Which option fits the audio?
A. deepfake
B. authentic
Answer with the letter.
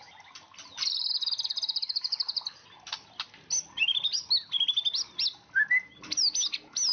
B